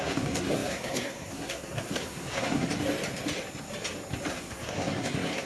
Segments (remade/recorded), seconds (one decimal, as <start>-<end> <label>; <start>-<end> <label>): 0.0-2.7 remade; 2.7-4.3 recorded; 4.3-5.5 remade